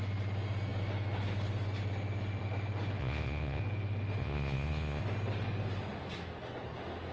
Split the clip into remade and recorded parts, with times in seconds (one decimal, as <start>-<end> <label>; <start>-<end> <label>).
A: 0.0-3.0 recorded; 3.0-3.6 remade; 3.6-4.2 recorded; 4.2-5.0 remade; 5.0-7.1 recorded